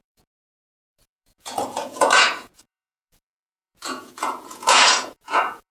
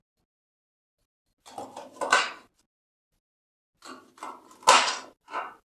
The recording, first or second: second